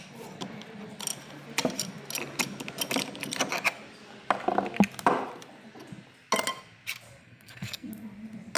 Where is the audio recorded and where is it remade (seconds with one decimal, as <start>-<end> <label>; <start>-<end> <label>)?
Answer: 0.0-7.2 recorded; 7.2-7.9 remade; 7.9-8.6 recorded